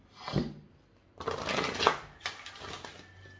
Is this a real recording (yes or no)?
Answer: yes